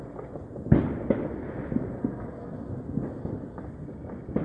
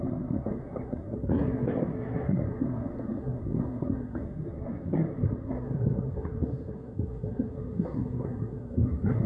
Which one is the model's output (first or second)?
second